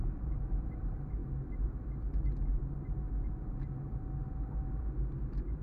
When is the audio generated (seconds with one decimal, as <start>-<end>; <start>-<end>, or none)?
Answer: 0.0-1.2; 4.6-5.6